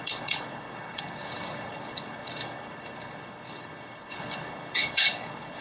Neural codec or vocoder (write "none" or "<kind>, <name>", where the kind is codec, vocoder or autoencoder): codec, HILCodec